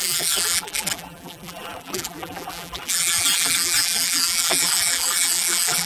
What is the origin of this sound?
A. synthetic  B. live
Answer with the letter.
A